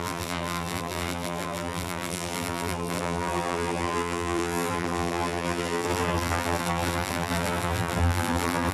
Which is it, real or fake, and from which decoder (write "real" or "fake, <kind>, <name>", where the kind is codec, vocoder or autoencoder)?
fake, vocoder, BigVGAN v2